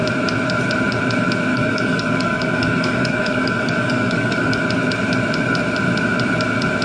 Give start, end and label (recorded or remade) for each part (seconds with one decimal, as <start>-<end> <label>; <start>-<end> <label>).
0.0-1.5 recorded; 1.5-4.6 remade; 4.6-6.8 recorded